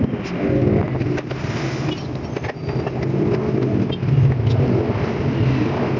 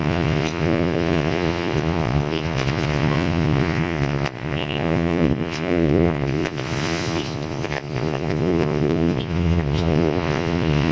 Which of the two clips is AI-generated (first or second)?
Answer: second